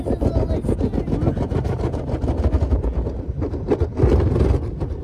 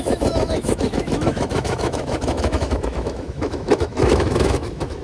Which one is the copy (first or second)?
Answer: second